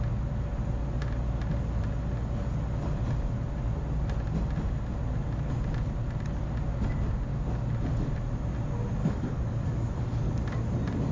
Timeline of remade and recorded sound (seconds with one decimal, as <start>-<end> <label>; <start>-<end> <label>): 0.0-9.0 recorded; 9.0-10.3 remade; 10.3-11.1 recorded